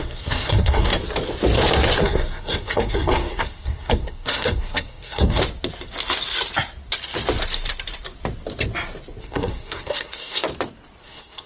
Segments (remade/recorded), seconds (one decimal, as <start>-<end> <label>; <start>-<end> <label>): 0.0-0.9 remade; 0.9-2.0 recorded; 2.0-5.4 remade; 5.4-9.2 recorded; 9.2-10.4 remade; 10.4-11.0 recorded; 11.0-11.5 remade